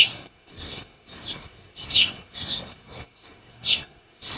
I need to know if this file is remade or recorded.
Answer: remade